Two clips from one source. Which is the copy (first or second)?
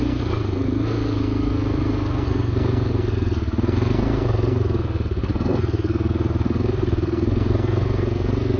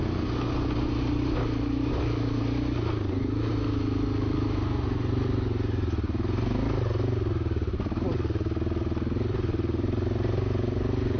first